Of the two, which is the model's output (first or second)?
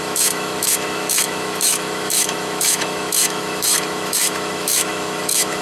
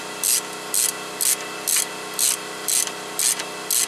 first